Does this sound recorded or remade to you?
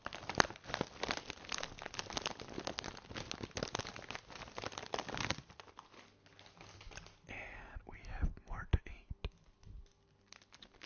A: recorded